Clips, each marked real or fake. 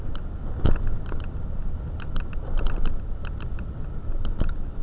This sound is real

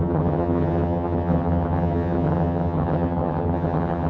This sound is fake